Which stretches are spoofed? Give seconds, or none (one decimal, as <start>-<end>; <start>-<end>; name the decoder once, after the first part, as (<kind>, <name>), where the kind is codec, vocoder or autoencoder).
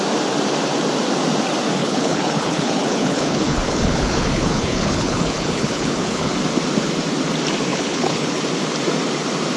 1.8-6.3 (codec, HILCodec); 7.7-8.4